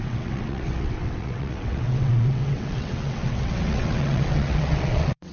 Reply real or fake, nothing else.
fake